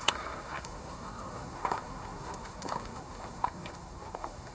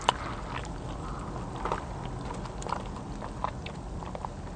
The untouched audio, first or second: second